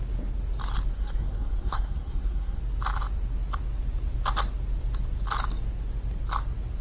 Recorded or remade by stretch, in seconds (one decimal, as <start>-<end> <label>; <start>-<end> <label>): 0.0-0.9 recorded; 0.9-2.6 remade; 2.6-6.8 recorded